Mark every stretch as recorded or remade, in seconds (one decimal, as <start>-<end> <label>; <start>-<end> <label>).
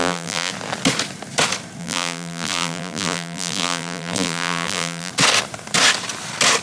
0.0-0.5 remade; 0.5-1.8 recorded; 1.8-5.1 remade; 5.1-6.6 recorded